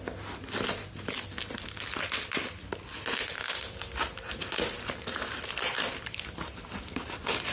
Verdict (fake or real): real